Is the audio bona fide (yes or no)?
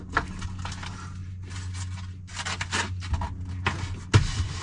yes